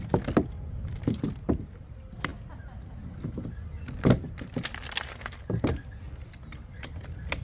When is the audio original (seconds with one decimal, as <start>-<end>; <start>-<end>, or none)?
0.0-7.4